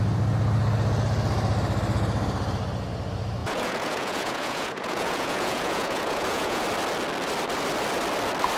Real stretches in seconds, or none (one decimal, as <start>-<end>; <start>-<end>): 0.0-3.4; 6.6-8.6